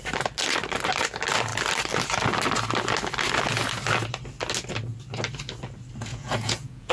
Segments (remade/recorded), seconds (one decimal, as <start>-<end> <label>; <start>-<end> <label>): 0.0-6.1 recorded; 6.1-6.9 remade